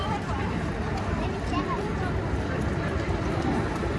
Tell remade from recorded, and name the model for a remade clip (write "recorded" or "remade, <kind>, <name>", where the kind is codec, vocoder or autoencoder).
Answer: recorded